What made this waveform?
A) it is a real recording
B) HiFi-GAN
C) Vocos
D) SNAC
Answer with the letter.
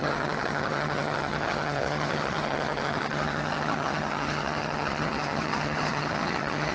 B